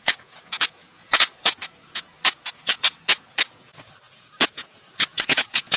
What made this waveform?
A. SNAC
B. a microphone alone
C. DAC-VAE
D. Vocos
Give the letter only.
D